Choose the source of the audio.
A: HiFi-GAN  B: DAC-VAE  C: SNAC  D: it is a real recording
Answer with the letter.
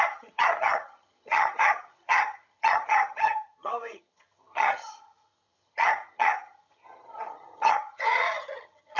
A